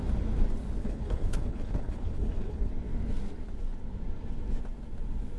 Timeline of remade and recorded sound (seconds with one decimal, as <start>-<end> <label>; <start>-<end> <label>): 0.0-0.8 recorded; 0.8-2.7 remade; 2.7-5.4 recorded